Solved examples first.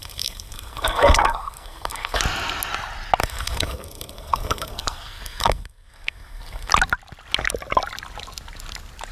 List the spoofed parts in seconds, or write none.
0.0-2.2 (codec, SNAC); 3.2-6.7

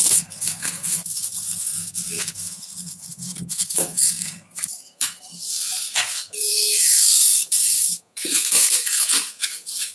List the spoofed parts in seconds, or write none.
0.0-9.9 (codec, SNAC)